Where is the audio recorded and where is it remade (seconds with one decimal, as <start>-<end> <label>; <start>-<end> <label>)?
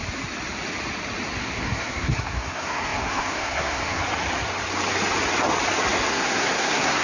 0.0-1.4 recorded; 1.4-4.0 remade; 4.0-6.1 recorded; 6.1-7.0 remade